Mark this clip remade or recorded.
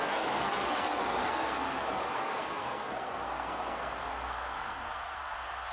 remade